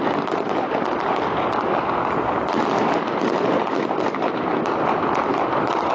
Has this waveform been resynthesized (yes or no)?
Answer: no